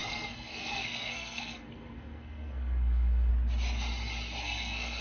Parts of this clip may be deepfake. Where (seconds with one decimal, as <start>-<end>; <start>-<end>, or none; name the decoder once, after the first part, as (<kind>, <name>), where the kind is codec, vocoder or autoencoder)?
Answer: 0.0-3.3 (codec, SNAC); 4.4-5.0